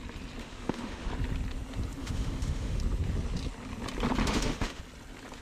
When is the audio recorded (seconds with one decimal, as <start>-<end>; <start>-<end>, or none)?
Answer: 0.0-0.4; 1.1-2.0; 2.8-4.2; 4.8-5.4